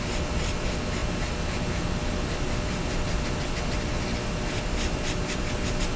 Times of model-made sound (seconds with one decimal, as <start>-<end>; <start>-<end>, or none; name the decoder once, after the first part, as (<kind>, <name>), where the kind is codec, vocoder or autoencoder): none